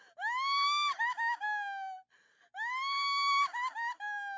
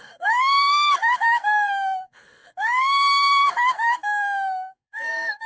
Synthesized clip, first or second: second